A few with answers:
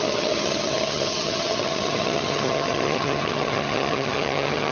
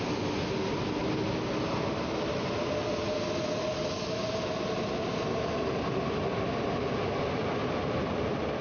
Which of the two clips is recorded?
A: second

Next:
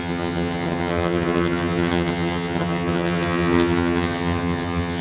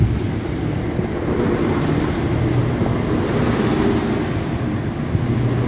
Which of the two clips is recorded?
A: second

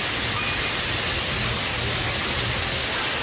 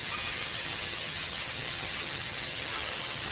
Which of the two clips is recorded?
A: first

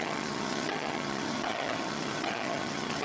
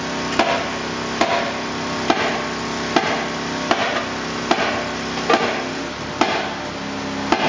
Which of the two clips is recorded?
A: second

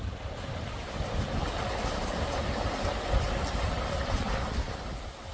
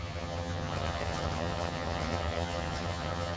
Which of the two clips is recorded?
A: first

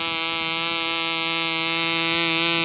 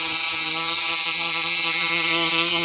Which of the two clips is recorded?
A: first